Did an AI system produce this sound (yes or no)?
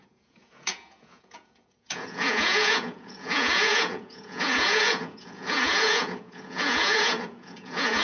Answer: yes